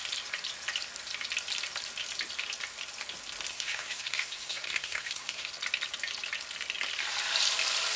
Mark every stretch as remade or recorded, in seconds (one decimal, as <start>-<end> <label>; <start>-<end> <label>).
0.0-3.5 recorded; 3.5-5.5 remade; 5.5-8.0 recorded

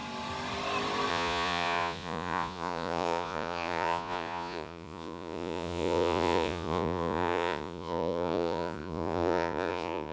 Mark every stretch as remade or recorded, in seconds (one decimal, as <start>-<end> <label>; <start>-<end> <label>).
0.0-1.1 recorded; 1.1-10.1 remade

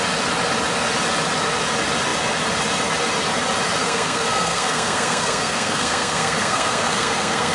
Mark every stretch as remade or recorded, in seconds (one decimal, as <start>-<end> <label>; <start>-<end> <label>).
0.0-3.8 recorded; 3.8-7.5 remade

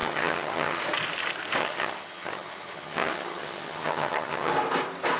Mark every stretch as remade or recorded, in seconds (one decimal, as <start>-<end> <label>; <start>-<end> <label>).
0.0-0.8 remade; 0.8-1.6 recorded; 1.6-4.5 remade; 4.5-5.2 recorded

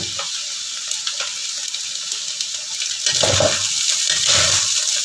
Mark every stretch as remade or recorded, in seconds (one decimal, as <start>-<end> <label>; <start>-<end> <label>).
0.0-5.0 recorded

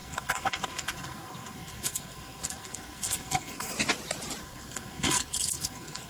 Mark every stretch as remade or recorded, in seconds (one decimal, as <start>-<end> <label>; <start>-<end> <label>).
0.0-3.7 remade; 3.7-4.4 recorded; 4.4-6.1 remade

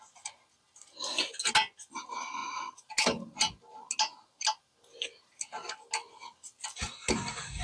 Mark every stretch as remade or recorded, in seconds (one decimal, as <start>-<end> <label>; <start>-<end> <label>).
0.0-7.6 recorded

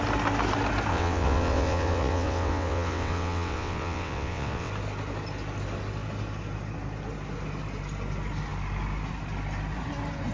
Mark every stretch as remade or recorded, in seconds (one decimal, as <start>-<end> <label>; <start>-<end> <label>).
0.0-0.9 recorded; 0.9-4.7 remade; 4.7-10.3 recorded